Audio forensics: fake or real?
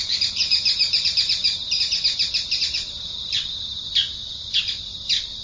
real